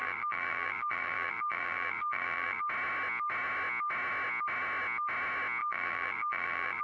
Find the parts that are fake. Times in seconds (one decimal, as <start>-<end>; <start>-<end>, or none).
0.0-2.6; 5.6-6.8